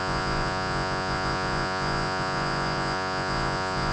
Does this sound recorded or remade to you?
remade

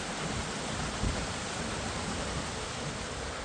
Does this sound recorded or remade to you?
recorded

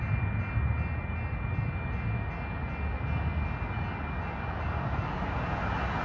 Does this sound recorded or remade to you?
recorded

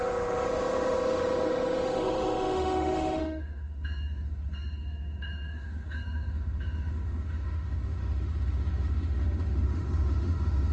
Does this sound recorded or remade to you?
remade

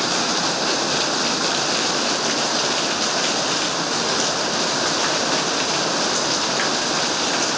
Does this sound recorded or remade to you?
recorded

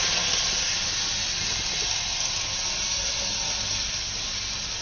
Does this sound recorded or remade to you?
recorded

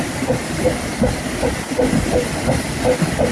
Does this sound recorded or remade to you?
recorded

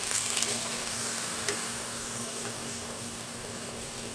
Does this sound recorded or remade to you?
remade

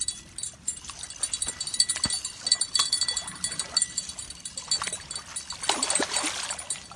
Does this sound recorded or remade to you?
recorded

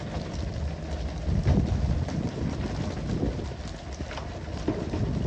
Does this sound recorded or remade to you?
recorded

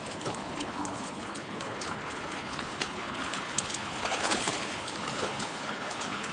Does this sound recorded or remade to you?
remade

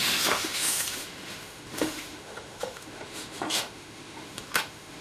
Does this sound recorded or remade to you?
remade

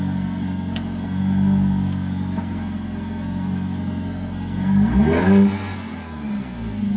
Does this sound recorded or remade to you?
remade